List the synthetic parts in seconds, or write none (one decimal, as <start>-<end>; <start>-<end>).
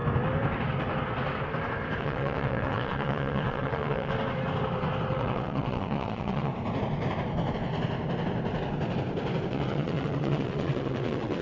2.0-4.1; 5.1-6.5; 9.5-11.4